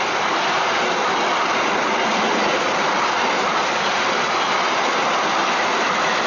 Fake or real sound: real